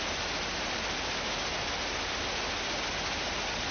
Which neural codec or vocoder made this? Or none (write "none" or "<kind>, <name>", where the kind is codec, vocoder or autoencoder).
none